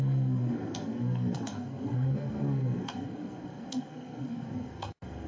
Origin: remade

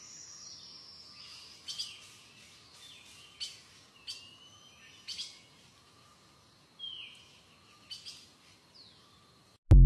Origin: recorded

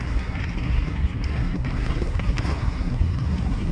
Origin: remade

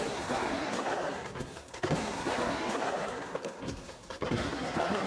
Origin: remade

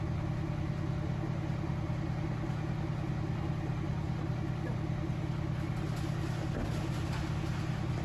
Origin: recorded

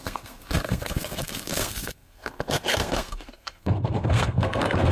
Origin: remade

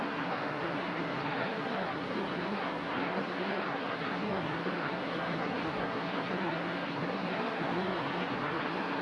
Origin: remade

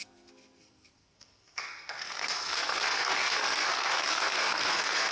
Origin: remade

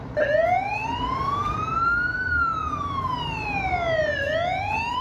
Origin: recorded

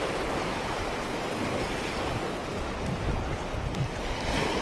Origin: recorded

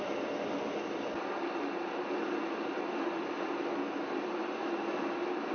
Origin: recorded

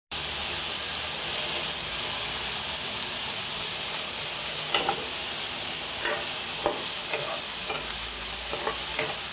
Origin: recorded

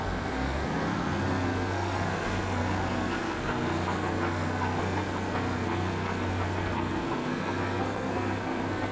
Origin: remade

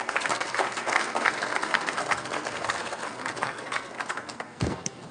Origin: remade